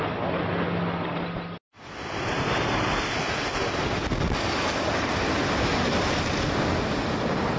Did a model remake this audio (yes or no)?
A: no